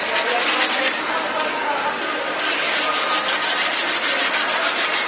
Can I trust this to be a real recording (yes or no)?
yes